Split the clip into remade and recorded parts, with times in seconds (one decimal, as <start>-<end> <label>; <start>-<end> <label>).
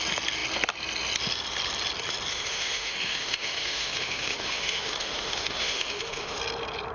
0.0-2.3 recorded; 2.3-6.4 remade; 6.4-6.9 recorded